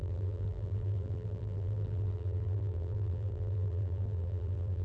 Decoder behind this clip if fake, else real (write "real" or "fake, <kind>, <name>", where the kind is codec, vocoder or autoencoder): fake, vocoder, BigVGAN v2